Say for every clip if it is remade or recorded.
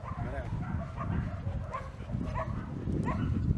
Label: recorded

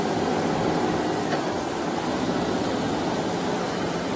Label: remade